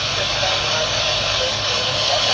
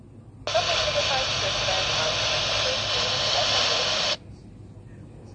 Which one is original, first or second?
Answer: second